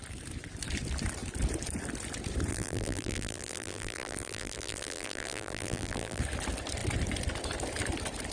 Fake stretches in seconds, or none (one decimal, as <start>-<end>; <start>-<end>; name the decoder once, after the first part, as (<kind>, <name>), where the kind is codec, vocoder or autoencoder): 2.5-6.2 (vocoder, BigVGAN v2)